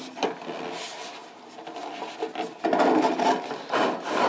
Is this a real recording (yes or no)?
yes